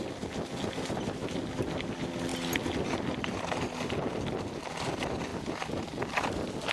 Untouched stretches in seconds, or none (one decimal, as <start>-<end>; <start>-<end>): 0.0-6.7

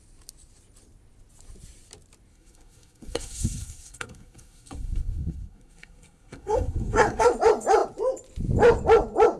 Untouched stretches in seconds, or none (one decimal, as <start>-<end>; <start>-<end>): 0.0-2.3; 7.3-9.4

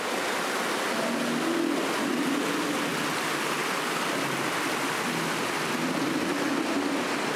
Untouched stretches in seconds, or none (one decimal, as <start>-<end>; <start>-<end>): 0.0-7.4